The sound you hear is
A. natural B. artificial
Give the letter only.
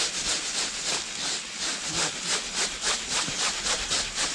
A